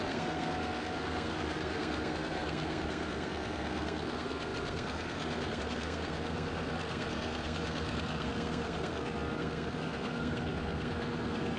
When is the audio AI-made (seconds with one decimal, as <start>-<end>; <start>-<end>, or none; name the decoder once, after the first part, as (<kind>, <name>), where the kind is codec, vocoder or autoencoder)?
0.0-11.6 (codec, SNAC)